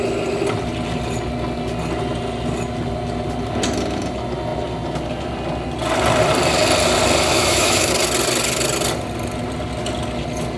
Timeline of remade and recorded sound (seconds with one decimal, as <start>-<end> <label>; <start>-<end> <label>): 0.0-7.3 recorded; 7.3-7.9 remade; 7.9-10.6 recorded